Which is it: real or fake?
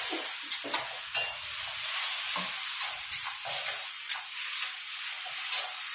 real